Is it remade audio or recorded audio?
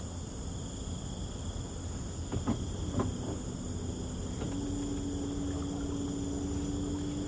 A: recorded